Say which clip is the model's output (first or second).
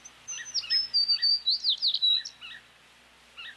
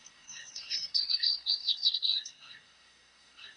second